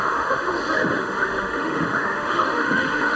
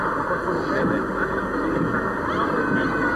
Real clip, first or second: second